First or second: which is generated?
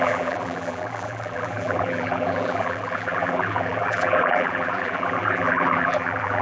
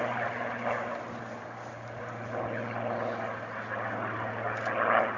first